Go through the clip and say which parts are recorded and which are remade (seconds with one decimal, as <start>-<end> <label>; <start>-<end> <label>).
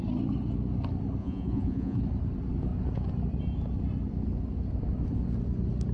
0.0-1.2 recorded; 1.2-2.0 remade; 2.0-5.9 recorded